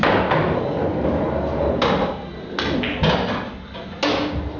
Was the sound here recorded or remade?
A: recorded